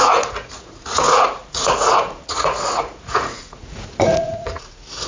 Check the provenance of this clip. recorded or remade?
remade